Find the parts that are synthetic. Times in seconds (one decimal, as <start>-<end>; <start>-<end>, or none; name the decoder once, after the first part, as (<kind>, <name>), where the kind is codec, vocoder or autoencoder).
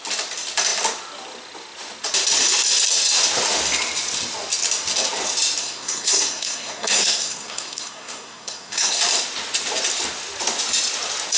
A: 5.6-9.0 (codec, SNAC)